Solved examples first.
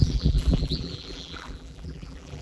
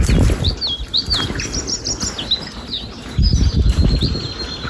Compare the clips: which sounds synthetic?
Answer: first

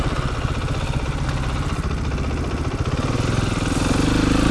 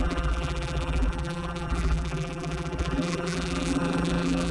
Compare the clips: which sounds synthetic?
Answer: second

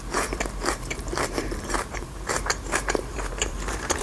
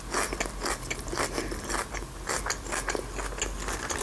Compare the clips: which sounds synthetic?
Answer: first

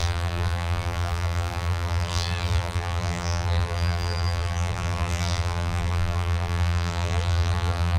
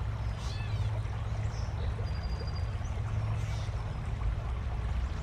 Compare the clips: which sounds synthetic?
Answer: first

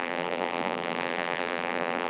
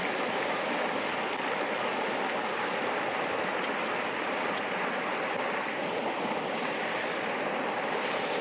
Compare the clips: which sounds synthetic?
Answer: first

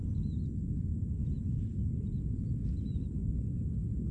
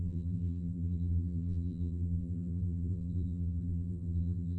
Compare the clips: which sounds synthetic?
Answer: second